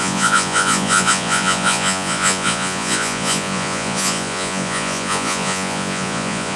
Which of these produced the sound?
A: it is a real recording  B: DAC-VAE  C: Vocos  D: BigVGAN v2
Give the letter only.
C